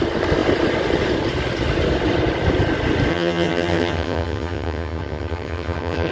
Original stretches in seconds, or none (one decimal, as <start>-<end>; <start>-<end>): 0.0-3.1

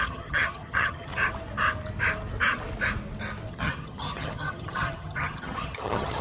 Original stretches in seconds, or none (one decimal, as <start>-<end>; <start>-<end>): 1.1-3.5